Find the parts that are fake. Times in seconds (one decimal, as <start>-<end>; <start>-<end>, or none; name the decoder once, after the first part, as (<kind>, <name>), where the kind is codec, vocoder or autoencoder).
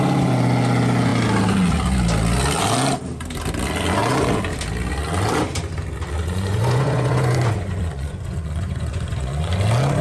6.2-9.5 (vocoder, Vocos)